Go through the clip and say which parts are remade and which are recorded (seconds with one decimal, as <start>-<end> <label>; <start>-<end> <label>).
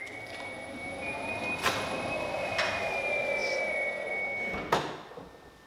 0.0-5.7 recorded